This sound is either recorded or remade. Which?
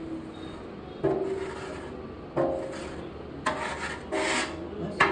recorded